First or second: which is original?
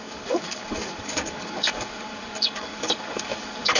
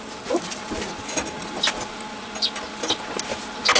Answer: second